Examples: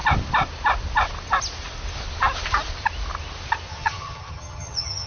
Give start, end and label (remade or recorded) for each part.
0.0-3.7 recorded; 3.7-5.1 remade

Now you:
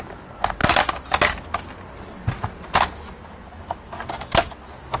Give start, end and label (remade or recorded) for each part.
0.0-5.0 recorded

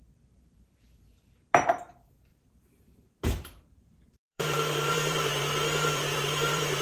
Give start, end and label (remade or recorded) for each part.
0.0-2.3 recorded; 2.3-6.8 remade

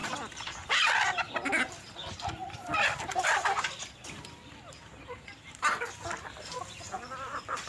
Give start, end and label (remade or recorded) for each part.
0.0-7.7 remade

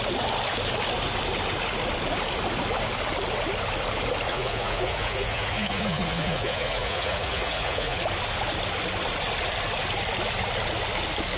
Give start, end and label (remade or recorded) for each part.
0.0-4.3 recorded; 4.3-8.0 remade; 8.0-11.4 recorded

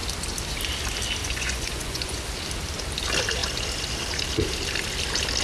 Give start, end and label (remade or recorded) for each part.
0.0-1.2 recorded; 1.2-2.2 remade; 2.2-5.4 recorded

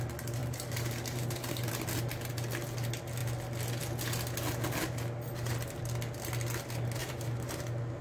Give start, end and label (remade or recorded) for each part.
0.0-0.4 recorded; 0.4-1.7 remade; 1.7-7.0 recorded; 7.0-7.6 remade; 7.6-8.0 recorded

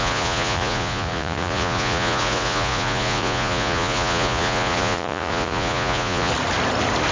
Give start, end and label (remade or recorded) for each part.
0.0-6.3 remade; 6.3-7.1 recorded